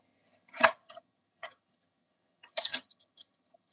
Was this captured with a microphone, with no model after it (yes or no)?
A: no